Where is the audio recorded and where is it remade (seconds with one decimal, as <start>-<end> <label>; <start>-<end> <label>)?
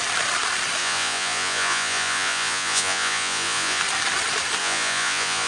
0.0-0.8 recorded; 0.8-3.8 remade; 3.8-4.6 recorded; 4.6-5.5 remade